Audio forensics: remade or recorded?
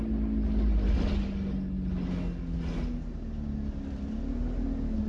recorded